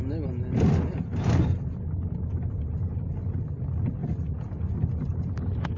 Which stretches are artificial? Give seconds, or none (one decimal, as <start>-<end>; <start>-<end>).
none